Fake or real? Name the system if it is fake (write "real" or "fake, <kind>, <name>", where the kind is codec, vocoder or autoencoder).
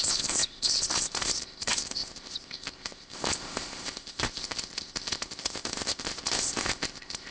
fake, codec, ZipCodec